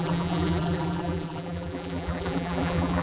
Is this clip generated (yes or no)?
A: yes